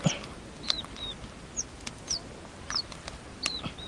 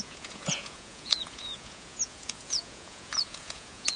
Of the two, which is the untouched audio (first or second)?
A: first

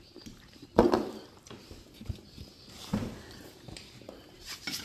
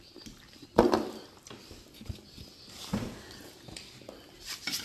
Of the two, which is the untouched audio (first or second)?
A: second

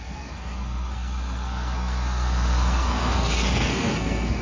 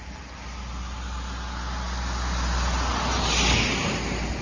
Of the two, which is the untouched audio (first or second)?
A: second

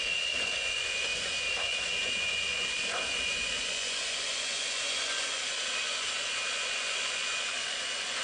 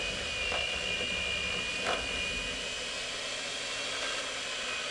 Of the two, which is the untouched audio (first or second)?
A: second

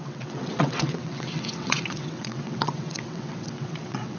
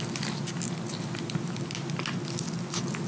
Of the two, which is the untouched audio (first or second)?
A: second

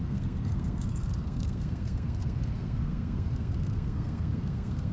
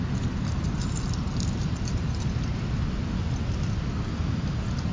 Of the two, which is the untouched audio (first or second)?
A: second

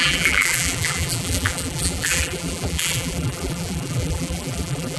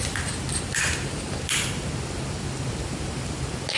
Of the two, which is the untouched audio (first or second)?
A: second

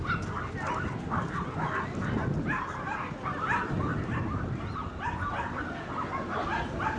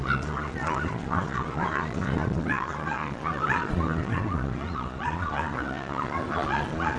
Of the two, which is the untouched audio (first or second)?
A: first